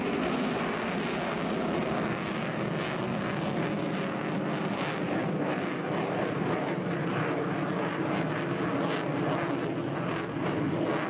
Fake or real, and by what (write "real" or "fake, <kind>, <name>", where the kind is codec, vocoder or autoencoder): real